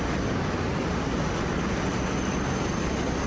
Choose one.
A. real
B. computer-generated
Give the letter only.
A